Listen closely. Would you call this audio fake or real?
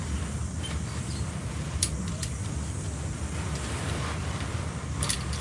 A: fake